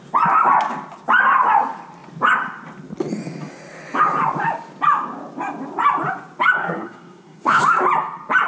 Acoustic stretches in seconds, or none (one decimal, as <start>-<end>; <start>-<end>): 0.0-6.6; 7.6-8.5